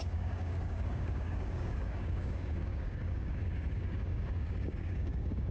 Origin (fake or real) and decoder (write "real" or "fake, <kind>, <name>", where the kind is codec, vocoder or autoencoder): fake, codec, DAC